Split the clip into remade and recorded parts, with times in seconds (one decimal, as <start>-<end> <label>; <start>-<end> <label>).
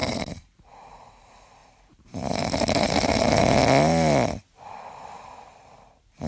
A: 0.0-1.2 remade; 1.2-1.6 recorded; 1.6-3.4 remade; 3.4-6.3 recorded